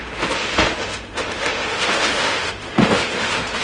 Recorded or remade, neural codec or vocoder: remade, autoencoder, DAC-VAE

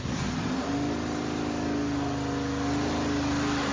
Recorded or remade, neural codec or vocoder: recorded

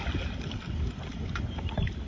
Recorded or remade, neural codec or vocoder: recorded